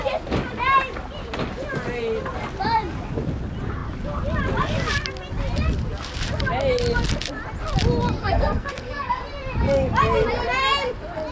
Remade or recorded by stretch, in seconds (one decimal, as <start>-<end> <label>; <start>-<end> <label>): 0.0-8.2 recorded; 8.2-9.2 remade; 9.2-11.3 recorded